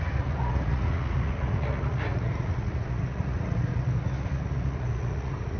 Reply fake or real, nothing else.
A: fake